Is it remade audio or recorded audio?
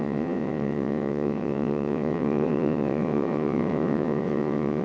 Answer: remade